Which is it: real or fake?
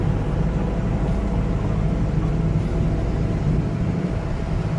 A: real